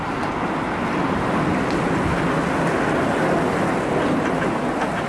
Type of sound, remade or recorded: recorded